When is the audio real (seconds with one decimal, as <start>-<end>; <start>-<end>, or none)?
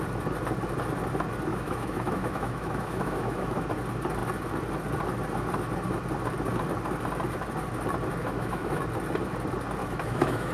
0.0-1.5; 3.7-8.2; 8.8-9.8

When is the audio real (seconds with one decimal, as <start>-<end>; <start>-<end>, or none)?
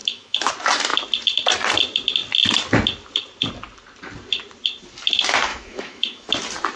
0.5-5.5; 6.3-6.8